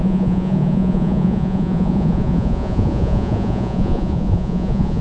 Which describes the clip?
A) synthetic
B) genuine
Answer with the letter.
A